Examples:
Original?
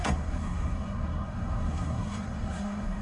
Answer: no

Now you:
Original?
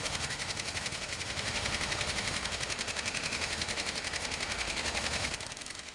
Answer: no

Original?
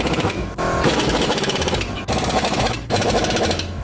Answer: no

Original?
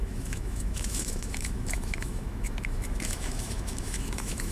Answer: no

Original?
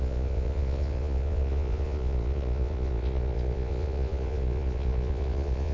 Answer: no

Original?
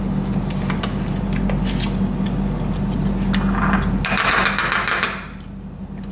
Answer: yes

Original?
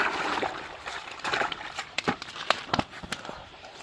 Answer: no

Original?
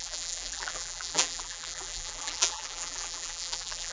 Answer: no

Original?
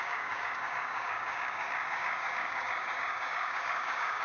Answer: no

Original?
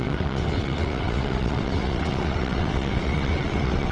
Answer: no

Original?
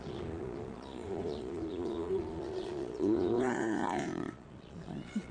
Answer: no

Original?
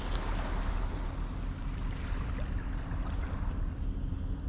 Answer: yes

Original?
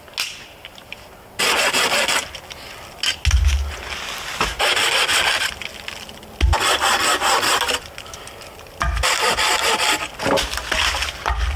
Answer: yes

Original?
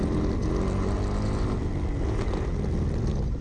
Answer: yes